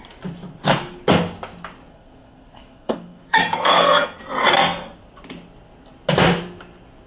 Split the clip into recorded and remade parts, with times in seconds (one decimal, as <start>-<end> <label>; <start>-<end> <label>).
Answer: 0.0-1.9 recorded; 1.9-4.2 remade; 4.2-7.1 recorded